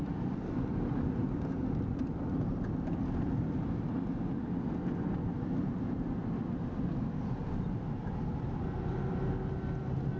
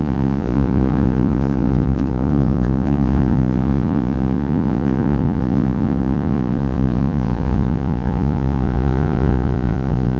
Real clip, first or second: first